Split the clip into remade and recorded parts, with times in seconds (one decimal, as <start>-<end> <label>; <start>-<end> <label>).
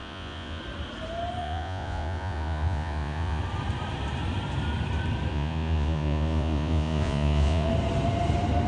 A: 0.0-0.6 remade; 0.6-1.4 recorded; 1.4-3.4 remade; 3.4-5.3 recorded; 5.3-7.7 remade; 7.7-8.7 recorded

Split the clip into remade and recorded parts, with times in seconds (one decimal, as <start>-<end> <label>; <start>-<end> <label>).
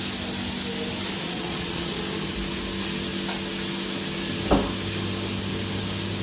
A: 0.0-1.2 recorded; 1.2-2.0 remade; 2.0-6.2 recorded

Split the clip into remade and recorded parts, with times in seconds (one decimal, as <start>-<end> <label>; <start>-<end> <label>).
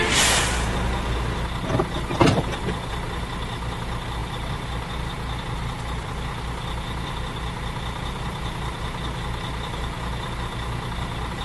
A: 0.0-11.4 recorded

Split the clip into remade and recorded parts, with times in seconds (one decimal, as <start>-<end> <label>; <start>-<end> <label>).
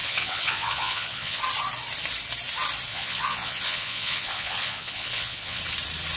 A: 0.0-1.4 remade; 1.4-2.9 recorded; 2.9-5.6 remade; 5.6-6.2 recorded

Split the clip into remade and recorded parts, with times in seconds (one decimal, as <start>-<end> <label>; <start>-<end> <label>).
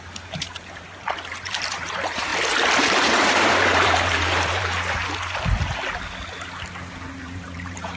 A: 0.0-2.3 remade; 2.3-3.0 recorded; 3.0-5.0 remade; 5.0-7.1 recorded; 7.1-8.0 remade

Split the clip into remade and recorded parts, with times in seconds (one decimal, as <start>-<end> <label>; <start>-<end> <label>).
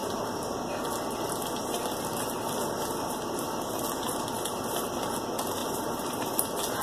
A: 0.0-5.6 recorded; 5.6-6.2 remade; 6.2-6.8 recorded